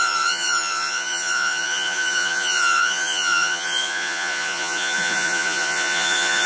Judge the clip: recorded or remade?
remade